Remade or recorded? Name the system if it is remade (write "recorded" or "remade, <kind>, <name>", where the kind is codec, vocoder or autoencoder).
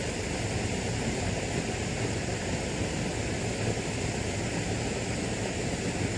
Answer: recorded